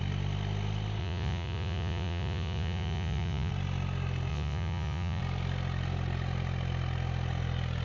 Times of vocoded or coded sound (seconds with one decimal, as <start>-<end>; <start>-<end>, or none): 1.0-3.5; 4.3-5.2